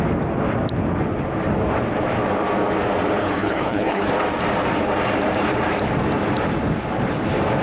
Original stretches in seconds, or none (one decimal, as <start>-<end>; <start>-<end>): 0.0-3.2; 4.1-7.6